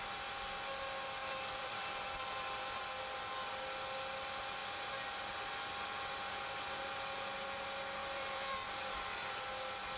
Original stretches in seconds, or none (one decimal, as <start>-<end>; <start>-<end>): 0.0-1.2; 2.8-8.0; 9.4-10.0